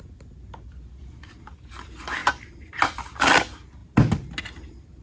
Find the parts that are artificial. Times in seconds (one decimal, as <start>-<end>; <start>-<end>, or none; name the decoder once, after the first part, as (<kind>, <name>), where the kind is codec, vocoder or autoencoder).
none